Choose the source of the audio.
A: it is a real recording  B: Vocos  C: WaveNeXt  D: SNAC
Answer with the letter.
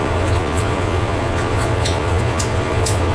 B